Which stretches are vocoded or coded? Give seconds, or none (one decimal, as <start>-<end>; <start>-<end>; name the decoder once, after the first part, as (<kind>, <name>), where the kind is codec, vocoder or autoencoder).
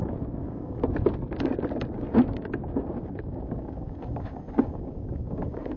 0.0-0.8 (codec, DAC); 2.1-5.8